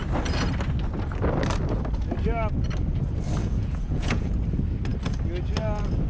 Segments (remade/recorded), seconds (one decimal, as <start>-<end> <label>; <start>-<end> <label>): 0.0-3.4 recorded; 3.4-4.3 remade; 4.3-6.1 recorded

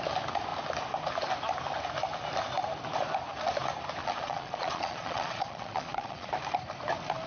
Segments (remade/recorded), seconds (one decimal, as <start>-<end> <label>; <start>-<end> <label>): 0.0-4.0 recorded; 4.0-6.3 remade; 6.3-7.3 recorded

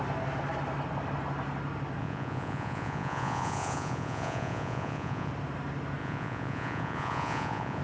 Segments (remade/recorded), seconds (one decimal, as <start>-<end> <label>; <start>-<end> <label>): 0.0-2.0 recorded; 2.0-5.3 remade; 5.3-6.0 recorded; 6.0-7.8 remade

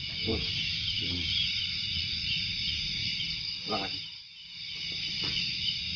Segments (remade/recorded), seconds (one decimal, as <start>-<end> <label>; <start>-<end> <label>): 0.0-0.8 recorded; 0.8-3.1 remade; 3.1-5.2 recorded; 5.2-6.0 remade

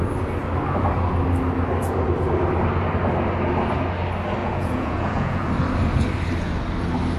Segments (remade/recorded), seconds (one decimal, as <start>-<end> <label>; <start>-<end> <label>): 0.0-4.4 recorded; 4.4-5.5 remade; 5.5-7.2 recorded

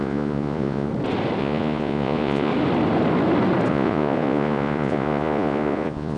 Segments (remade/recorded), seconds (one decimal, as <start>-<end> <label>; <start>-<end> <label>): 0.0-0.9 remade; 0.9-1.4 recorded; 1.4-2.5 remade; 2.5-3.7 recorded; 3.7-6.2 remade

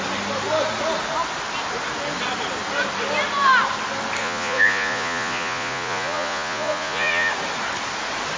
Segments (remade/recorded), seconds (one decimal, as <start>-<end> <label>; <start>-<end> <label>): 0.0-4.2 recorded; 4.2-7.3 remade; 7.3-8.4 recorded